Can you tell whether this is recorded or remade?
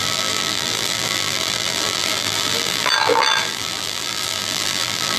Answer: remade